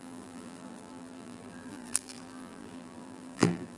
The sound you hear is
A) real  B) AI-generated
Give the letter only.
B